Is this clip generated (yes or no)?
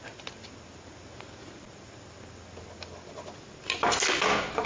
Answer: no